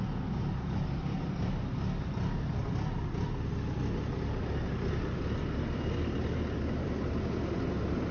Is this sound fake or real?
real